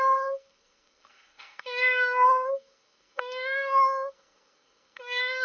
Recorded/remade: remade